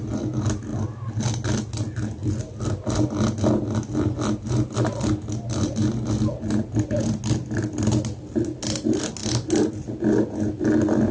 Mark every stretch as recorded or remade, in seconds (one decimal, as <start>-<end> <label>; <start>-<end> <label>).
0.0-11.1 recorded